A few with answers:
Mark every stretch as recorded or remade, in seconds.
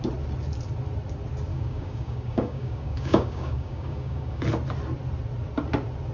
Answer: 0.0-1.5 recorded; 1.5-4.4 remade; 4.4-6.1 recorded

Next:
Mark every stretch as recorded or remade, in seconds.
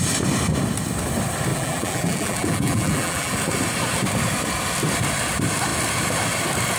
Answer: 0.0-1.5 recorded; 1.5-3.3 remade; 3.3-6.8 recorded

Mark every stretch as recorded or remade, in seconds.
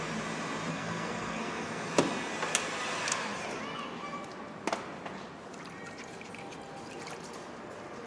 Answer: 0.0-0.7 recorded; 0.7-1.9 remade; 1.9-8.1 recorded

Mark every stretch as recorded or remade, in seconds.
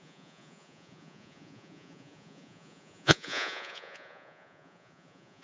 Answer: 0.0-5.4 remade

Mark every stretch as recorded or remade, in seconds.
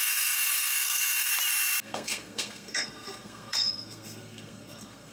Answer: 0.0-1.3 remade; 1.3-1.8 recorded; 1.8-5.1 remade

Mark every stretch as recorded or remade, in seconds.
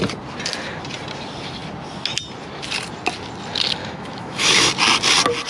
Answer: 0.0-3.8 recorded; 3.8-4.7 remade; 4.7-5.5 recorded